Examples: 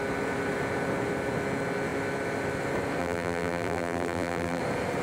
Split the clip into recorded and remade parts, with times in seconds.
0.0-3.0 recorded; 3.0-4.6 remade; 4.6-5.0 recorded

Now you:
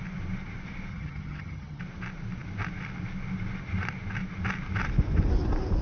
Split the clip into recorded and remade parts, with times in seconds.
0.0-0.9 recorded; 0.9-1.8 remade; 1.8-5.8 recorded

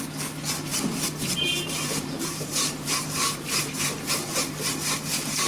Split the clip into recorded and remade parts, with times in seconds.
0.0-0.7 recorded; 0.7-4.0 remade; 4.0-5.5 recorded

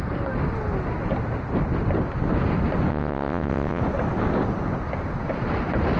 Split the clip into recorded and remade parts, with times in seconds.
0.0-2.9 recorded; 2.9-3.8 remade; 3.8-6.0 recorded

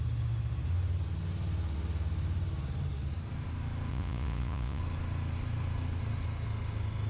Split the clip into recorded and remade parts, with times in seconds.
0.0-3.9 recorded; 3.9-4.8 remade; 4.8-7.1 recorded